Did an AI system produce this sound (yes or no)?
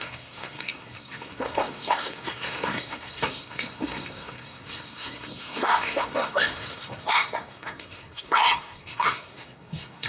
yes